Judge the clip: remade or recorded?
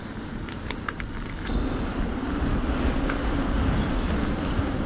remade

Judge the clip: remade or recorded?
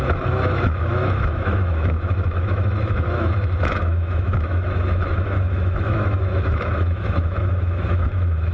remade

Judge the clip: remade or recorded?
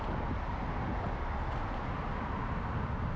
recorded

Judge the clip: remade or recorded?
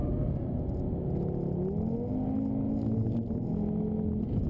recorded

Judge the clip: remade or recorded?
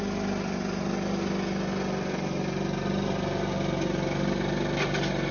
recorded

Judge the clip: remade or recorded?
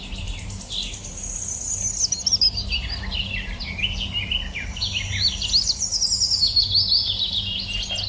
recorded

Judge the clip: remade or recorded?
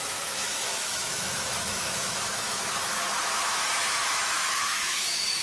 remade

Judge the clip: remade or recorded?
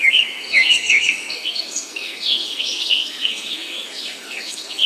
remade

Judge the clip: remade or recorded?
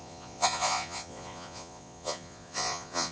remade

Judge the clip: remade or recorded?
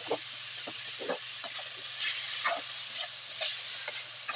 recorded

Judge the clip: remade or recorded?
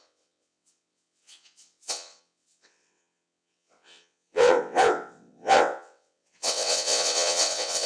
remade